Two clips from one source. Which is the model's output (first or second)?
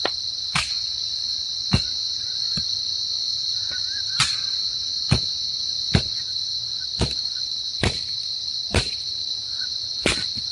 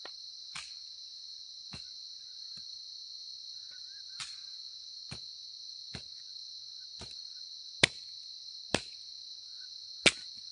first